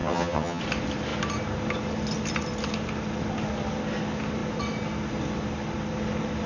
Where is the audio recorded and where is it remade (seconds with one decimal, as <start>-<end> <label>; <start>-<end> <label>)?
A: 0.0-0.6 remade; 0.6-6.5 recorded